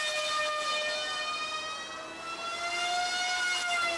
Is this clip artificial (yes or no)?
no